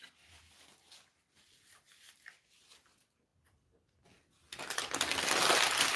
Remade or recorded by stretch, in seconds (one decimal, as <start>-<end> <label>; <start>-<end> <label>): 0.0-6.0 recorded